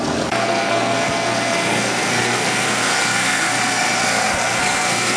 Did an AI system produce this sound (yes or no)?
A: yes